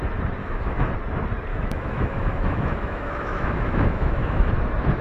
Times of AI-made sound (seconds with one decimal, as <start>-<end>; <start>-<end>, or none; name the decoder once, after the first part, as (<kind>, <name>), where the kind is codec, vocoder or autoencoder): 0.4-0.9 (autoencoder, DAC-VAE); 1.5-4.5